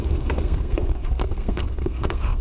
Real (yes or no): no